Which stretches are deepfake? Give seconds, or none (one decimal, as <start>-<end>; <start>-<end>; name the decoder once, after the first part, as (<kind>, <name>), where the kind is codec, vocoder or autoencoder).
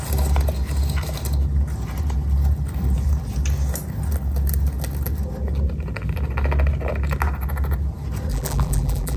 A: 8.3-9.2 (vocoder, BigVGAN v2)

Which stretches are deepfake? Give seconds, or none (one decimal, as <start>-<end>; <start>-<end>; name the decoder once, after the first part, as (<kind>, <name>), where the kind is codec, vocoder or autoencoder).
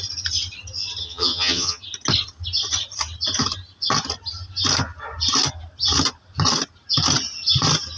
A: 1.0-1.8 (vocoder, HiFi-GAN)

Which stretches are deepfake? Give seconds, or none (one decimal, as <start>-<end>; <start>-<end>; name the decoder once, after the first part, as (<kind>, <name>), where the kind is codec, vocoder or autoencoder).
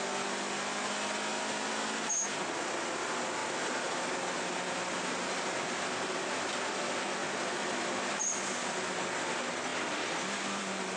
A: 7.2-8.1 (vocoder, BigVGAN v2); 9.7-10.6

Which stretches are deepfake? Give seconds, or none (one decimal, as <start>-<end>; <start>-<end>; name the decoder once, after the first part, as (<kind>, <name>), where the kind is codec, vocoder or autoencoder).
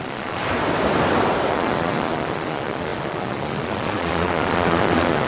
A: 0.0-0.4 (vocoder, Vocos); 1.5-5.3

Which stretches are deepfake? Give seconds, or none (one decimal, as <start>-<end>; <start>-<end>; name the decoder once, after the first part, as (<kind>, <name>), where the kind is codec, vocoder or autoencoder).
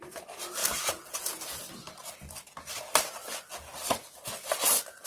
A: 0.6-1.6 (vocoder, Vocos)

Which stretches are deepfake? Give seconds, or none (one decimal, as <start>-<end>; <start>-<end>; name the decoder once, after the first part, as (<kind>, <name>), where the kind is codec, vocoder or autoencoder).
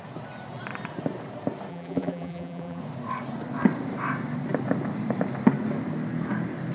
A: 1.7-2.8 (vocoder, BigVGAN v2)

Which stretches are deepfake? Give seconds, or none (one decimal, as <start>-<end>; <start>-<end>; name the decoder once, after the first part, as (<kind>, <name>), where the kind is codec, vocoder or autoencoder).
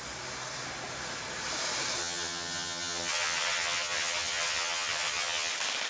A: 2.0-5.5 (vocoder, HiFi-GAN)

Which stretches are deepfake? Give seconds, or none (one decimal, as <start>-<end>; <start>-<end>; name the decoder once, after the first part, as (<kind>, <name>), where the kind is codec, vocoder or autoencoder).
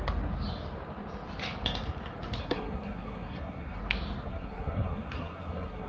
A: 2.4-3.8 (codec, SNAC); 4.3-5.9